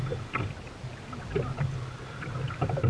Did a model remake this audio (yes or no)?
no